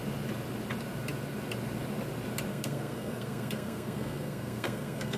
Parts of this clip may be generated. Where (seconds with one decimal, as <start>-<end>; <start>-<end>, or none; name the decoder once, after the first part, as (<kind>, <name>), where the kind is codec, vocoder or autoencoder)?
2.5-5.2 (codec, SNAC)